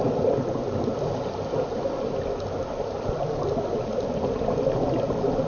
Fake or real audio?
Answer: real